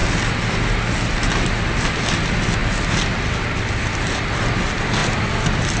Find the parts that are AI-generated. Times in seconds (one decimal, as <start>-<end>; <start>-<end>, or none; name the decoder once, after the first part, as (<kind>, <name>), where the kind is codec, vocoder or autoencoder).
none